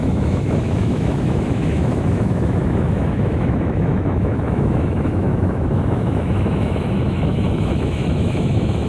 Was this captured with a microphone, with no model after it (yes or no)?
no